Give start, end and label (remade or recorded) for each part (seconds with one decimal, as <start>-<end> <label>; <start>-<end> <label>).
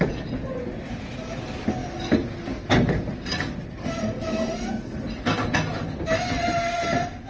0.0-7.3 recorded